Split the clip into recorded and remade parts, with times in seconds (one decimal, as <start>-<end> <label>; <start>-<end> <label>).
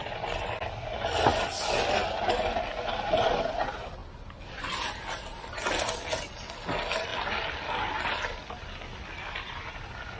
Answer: 0.0-10.2 recorded